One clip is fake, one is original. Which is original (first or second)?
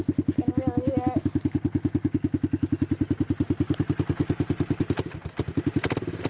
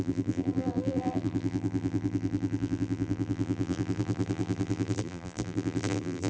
first